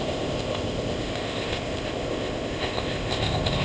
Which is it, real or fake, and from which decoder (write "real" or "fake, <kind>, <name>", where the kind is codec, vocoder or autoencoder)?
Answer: fake, codec, ZipCodec